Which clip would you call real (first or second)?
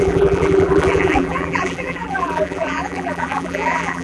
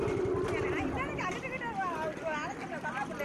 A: second